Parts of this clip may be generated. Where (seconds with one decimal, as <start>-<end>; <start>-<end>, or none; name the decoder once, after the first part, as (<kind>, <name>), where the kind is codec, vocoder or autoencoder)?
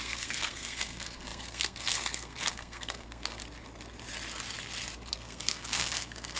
0.0-3.4 (codec, SNAC); 5.1-6.4